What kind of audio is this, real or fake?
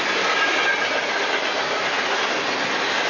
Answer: real